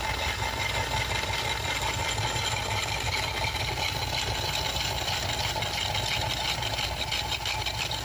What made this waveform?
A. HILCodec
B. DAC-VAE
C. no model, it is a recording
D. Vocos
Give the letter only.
C